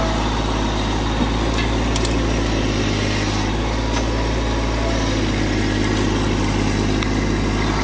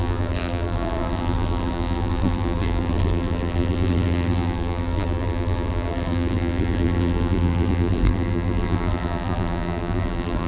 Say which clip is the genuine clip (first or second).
first